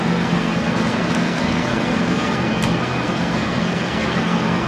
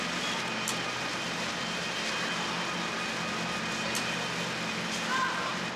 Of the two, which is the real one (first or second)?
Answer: second